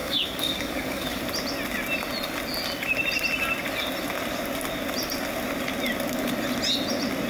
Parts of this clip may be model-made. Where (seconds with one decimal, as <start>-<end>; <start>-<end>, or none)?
0.0-1.2